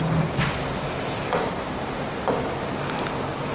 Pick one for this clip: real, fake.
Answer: real